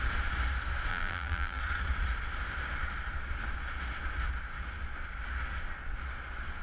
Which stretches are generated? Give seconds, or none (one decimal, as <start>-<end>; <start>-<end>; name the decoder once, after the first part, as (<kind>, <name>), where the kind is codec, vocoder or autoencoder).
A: 0.9-1.6 (vocoder, BigVGAN v2)